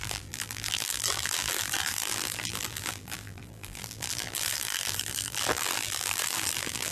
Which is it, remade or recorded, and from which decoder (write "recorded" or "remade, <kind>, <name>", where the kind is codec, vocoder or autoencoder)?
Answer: remade, vocoder, BigVGAN v2